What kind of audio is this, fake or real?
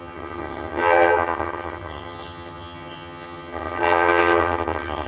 fake